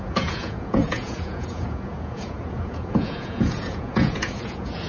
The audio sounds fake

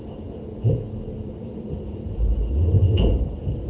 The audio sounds fake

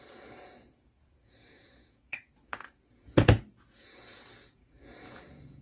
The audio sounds fake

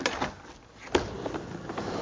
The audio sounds real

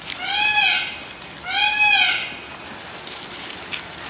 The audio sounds real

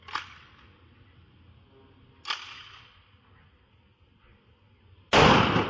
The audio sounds real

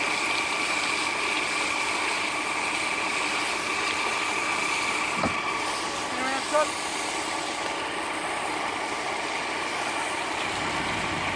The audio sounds real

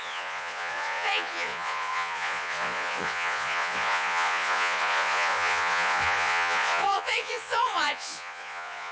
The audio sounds fake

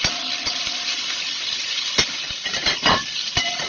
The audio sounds real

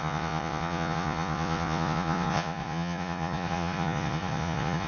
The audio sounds fake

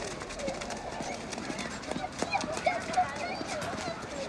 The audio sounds real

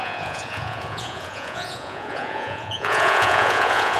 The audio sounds fake